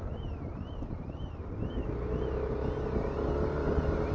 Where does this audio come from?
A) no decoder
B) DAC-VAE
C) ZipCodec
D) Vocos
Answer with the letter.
A